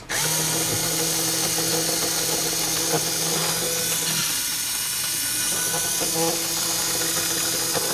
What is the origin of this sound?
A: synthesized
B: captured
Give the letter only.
B